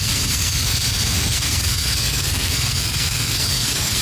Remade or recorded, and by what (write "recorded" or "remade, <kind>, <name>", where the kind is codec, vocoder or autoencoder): remade, codec, SNAC